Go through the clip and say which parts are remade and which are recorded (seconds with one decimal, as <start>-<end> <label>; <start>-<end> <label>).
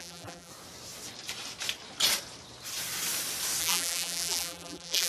0.0-0.5 remade; 0.5-3.6 recorded; 3.6-5.1 remade